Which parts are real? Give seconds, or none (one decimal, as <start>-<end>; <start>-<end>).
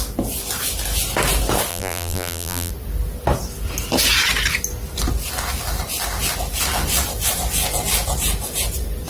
0.0-1.7; 2.7-9.1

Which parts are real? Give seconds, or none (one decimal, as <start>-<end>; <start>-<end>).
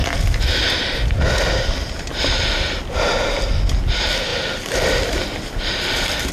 0.0-6.3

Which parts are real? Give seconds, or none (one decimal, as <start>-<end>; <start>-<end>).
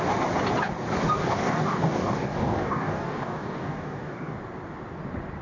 0.0-1.2; 4.4-5.4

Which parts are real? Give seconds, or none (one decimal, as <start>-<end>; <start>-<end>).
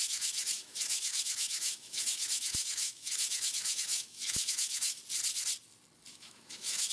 5.0-6.1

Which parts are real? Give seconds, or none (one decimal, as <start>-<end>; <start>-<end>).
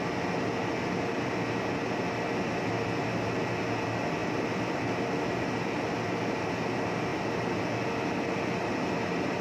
0.0-4.2; 4.9-9.4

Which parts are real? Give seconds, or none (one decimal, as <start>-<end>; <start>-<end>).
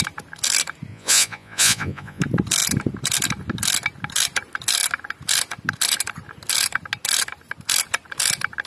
0.0-0.9; 2.2-8.7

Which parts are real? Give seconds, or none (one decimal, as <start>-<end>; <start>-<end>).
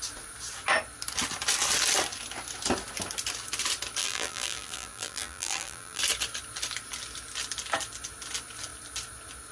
0.0-4.0; 6.0-9.5